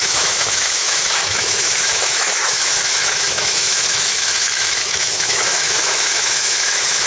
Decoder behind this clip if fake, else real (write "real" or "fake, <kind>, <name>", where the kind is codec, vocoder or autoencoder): fake, autoencoder, DAC-VAE